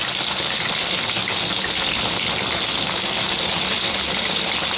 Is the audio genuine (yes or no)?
yes